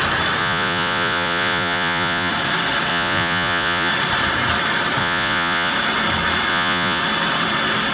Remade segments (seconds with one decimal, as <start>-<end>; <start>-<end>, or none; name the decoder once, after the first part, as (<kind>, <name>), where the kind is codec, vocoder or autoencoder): 0.4-2.3 (vocoder, Vocos); 2.9-3.9; 5.0-5.7; 6.5-7.0